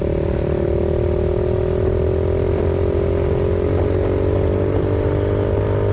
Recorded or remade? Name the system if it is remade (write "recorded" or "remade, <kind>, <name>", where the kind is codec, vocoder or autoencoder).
recorded